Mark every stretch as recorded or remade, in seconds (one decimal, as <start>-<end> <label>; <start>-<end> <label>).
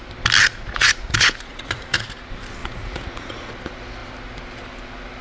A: 0.0-0.4 recorded; 0.4-2.2 remade; 2.2-2.6 recorded; 2.6-3.5 remade; 3.5-5.2 recorded